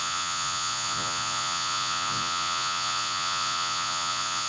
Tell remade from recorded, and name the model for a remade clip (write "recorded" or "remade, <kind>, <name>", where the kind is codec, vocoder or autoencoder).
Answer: remade, vocoder, Vocos